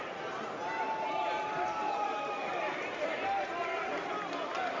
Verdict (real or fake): real